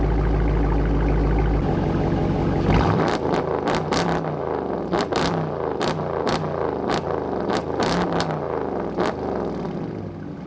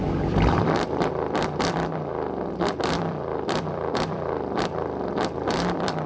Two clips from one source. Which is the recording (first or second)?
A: first